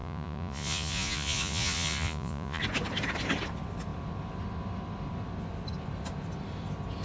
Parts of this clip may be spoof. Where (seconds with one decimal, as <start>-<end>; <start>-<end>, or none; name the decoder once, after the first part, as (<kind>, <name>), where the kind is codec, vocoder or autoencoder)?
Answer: 0.0-2.6 (vocoder, Vocos)